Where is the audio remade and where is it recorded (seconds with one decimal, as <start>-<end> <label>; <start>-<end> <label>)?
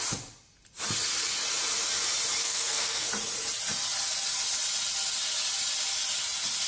0.0-2.4 recorded; 2.4-3.1 remade; 3.1-6.7 recorded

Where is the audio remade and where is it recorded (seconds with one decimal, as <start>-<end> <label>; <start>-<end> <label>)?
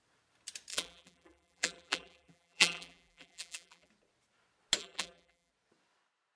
0.0-0.7 recorded; 0.7-3.9 remade; 3.9-4.8 recorded; 4.8-5.5 remade; 5.5-6.4 recorded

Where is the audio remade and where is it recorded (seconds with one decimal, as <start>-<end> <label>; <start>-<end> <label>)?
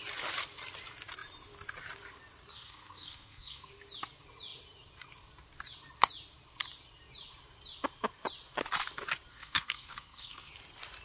0.0-2.5 recorded; 2.5-3.7 remade; 3.7-9.3 recorded; 9.3-10.5 remade; 10.5-11.0 recorded